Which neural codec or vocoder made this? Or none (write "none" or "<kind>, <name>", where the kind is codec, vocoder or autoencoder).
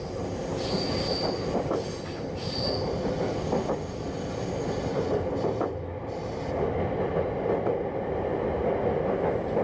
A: none